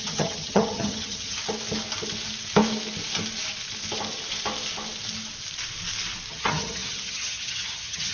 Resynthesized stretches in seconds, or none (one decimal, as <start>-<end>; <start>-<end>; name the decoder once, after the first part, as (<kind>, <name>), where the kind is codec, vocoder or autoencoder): 0.0-1.4 (vocoder, HiFi-GAN); 6.3-8.1